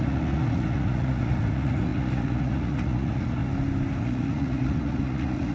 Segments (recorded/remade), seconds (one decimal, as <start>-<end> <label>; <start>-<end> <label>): 0.0-3.4 remade; 3.4-4.0 recorded; 4.0-5.5 remade